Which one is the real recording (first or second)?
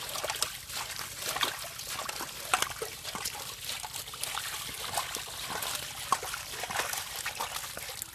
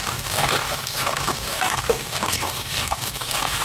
first